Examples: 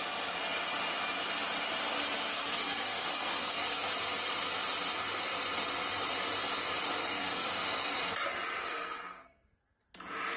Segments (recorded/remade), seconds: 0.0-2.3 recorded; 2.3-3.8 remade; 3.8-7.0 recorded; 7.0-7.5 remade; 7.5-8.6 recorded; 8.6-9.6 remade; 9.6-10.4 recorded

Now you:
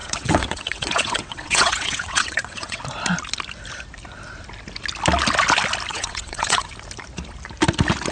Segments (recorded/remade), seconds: 0.0-2.8 remade; 2.8-5.9 recorded; 5.9-6.7 remade; 6.7-8.1 recorded